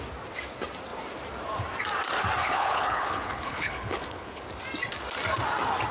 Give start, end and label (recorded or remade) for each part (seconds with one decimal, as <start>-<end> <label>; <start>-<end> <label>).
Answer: 0.0-2.4 recorded; 2.4-4.4 remade; 4.4-5.9 recorded